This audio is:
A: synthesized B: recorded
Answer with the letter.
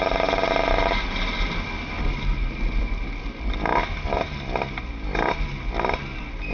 B